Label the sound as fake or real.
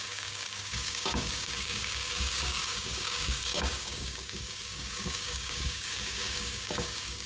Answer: fake